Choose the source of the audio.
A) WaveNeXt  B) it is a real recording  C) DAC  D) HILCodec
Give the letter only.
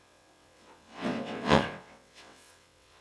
A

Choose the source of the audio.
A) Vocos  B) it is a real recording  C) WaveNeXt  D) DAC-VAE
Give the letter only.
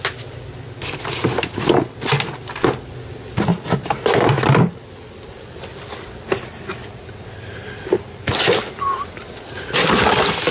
B